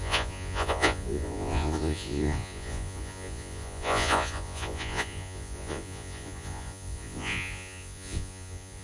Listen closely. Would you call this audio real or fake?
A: fake